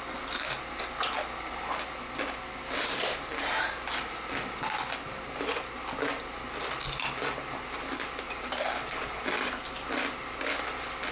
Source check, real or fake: real